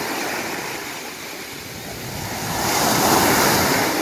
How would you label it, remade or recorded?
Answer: recorded